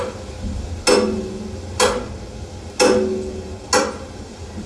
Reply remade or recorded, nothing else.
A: recorded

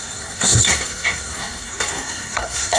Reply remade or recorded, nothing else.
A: remade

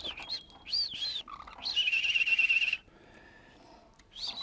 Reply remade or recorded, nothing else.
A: recorded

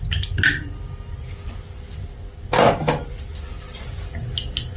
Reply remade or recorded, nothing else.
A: recorded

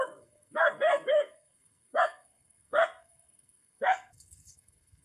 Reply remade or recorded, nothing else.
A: remade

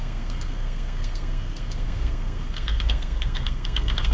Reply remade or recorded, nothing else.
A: remade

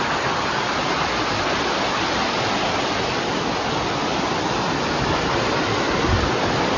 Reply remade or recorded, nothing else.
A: recorded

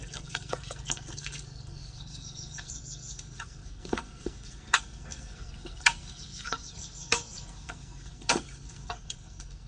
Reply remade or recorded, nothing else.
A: remade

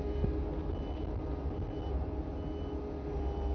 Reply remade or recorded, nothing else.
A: recorded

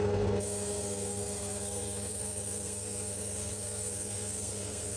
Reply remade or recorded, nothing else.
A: remade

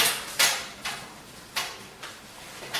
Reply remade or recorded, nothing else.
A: recorded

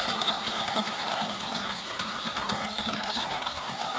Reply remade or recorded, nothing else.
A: remade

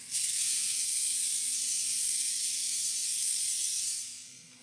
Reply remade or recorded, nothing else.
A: remade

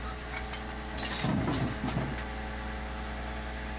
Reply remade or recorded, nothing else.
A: recorded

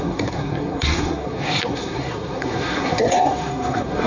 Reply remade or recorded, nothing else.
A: remade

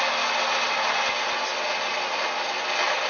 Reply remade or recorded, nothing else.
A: recorded